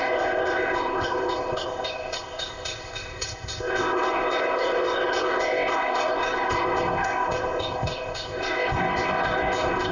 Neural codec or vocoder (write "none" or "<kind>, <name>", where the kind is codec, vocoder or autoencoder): codec, ZipCodec